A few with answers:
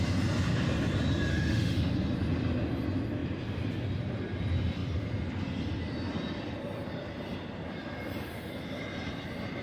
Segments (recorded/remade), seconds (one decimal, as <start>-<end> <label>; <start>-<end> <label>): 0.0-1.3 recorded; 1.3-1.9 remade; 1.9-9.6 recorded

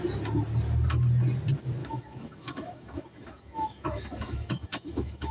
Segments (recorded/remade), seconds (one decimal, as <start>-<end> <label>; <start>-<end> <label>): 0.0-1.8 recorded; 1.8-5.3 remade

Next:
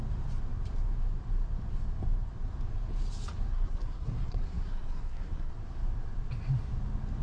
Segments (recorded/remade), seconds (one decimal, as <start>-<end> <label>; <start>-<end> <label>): 0.0-3.5 recorded; 3.5-5.5 remade; 5.5-7.2 recorded

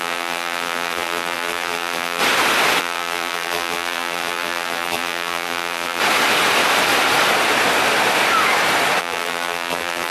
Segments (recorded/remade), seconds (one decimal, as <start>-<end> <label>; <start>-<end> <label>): 0.0-2.2 remade; 2.2-2.8 recorded; 2.8-6.0 remade; 6.0-9.0 recorded; 9.0-10.1 remade

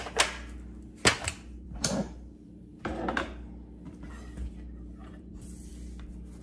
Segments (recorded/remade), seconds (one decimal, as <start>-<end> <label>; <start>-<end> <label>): 0.0-1.1 recorded; 1.1-2.9 remade; 2.9-5.0 recorded; 5.0-5.7 remade; 5.7-6.4 recorded

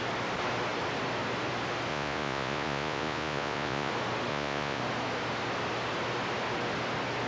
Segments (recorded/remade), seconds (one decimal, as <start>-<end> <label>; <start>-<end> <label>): 0.0-1.9 recorded; 1.9-3.9 remade; 3.9-4.3 recorded; 4.3-4.8 remade; 4.8-7.3 recorded